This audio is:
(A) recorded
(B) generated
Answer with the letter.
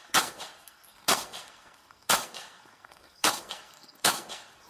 B